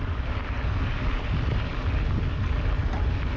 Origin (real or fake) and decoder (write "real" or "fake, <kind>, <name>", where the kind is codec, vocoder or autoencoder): real